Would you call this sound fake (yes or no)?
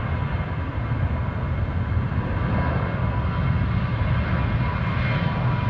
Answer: no